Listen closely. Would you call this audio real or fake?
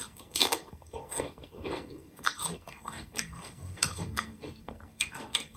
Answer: fake